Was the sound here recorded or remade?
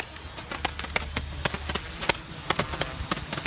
recorded